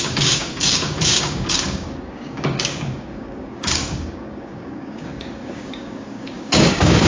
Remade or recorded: remade